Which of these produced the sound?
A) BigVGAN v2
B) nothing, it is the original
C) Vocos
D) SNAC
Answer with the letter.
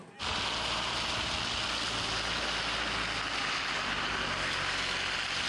B